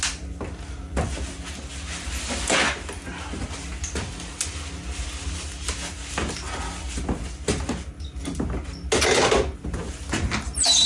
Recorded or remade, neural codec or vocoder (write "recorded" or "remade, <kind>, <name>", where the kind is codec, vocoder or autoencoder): recorded